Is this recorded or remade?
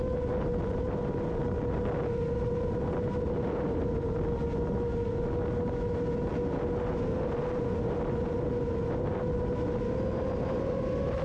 recorded